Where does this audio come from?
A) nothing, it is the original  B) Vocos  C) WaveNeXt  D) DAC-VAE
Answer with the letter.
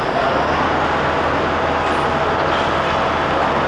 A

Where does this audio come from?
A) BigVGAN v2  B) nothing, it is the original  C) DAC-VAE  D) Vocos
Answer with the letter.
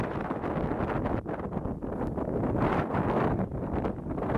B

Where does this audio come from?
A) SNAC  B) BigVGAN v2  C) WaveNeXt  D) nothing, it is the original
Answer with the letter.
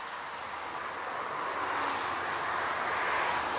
D